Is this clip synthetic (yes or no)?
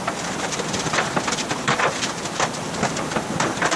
yes